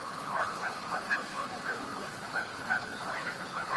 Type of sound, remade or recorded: remade